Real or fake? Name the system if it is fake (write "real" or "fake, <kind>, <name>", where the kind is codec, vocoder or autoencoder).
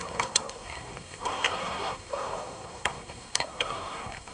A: fake, codec, SNAC